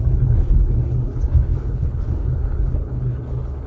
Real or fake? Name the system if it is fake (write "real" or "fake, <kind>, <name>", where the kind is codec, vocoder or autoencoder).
fake, codec, HILCodec